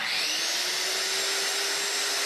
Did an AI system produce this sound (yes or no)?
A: no